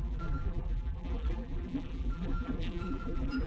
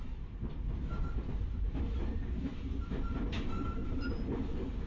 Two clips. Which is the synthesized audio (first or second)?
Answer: first